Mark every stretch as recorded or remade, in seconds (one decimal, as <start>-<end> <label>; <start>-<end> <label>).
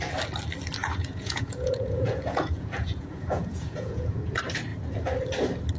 0.0-0.8 recorded; 0.8-4.3 remade; 4.3-5.8 recorded